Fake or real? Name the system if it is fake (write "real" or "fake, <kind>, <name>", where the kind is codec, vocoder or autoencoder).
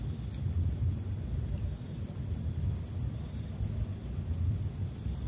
real